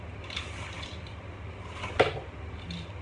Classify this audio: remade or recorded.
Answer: recorded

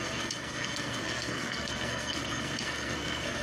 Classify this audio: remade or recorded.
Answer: remade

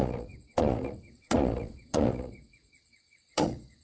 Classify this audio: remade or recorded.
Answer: remade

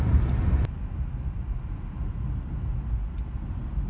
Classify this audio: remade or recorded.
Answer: recorded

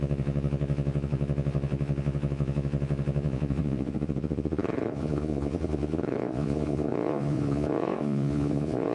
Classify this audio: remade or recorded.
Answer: remade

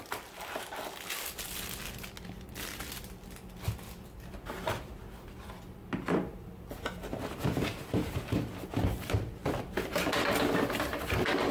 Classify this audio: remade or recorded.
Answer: recorded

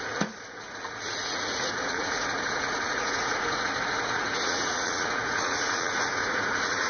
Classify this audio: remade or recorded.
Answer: remade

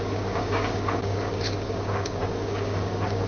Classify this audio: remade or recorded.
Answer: remade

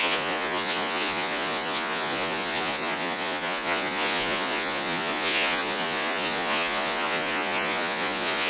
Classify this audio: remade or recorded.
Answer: remade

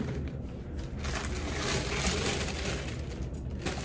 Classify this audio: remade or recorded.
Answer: recorded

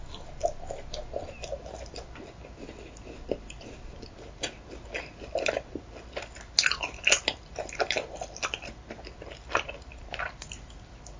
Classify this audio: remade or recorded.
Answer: recorded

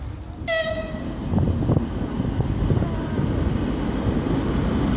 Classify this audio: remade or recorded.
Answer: recorded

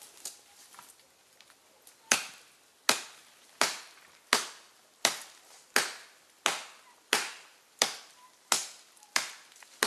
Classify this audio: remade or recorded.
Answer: recorded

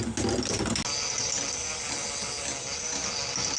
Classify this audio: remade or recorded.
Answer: recorded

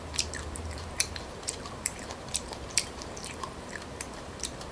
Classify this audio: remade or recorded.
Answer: remade